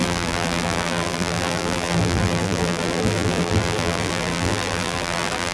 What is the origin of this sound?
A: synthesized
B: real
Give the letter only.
A